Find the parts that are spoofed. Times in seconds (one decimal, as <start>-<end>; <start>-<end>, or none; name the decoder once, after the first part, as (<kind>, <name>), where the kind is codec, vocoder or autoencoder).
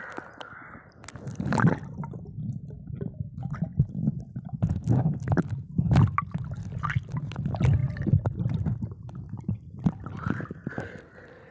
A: none